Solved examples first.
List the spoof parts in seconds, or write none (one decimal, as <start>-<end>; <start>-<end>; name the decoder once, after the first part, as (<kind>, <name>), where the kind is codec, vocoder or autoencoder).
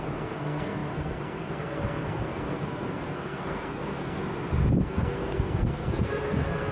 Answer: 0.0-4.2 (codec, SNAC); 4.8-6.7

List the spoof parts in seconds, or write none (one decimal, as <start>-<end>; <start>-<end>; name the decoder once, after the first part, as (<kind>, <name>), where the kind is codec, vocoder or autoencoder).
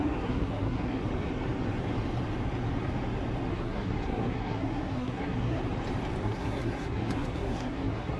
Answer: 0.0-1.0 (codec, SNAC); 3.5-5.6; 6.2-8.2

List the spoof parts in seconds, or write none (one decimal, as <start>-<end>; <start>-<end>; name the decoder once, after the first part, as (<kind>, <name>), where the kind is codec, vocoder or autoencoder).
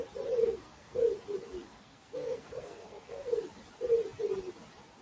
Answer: 0.4-1.1 (codec, SNAC); 1.6-3.4